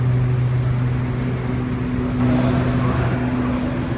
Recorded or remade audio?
recorded